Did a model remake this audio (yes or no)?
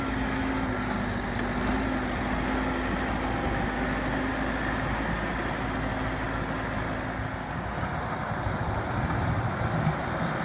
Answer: no